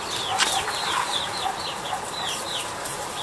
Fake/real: real